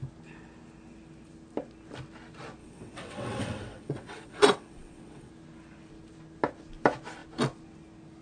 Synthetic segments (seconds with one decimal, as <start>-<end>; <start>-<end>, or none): 2.6-5.3